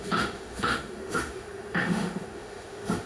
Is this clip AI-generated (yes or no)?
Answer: yes